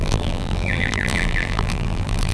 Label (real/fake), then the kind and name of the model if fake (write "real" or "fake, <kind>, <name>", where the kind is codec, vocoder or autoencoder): fake, vocoder, BigVGAN v2